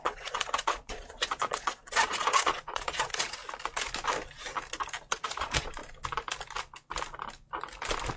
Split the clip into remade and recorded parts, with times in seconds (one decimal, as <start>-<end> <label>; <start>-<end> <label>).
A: 0.0-3.4 remade; 3.4-5.1 recorded; 5.1-5.8 remade; 5.8-8.2 recorded